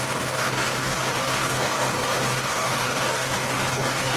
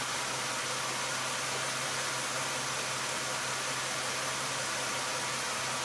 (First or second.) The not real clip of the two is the first